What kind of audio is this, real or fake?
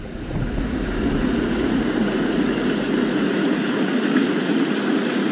fake